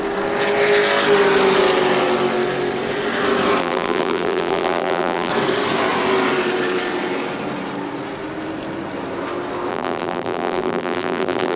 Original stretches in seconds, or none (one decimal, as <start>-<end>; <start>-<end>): 0.0-3.6; 5.3-9.7